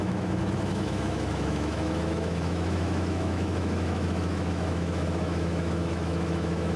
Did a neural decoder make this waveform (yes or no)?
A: yes